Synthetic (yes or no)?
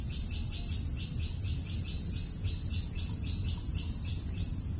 no